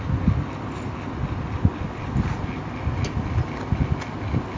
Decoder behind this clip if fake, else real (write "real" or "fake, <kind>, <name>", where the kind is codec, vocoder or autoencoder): real